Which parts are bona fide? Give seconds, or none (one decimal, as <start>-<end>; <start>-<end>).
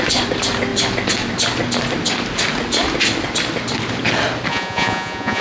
0.0-4.5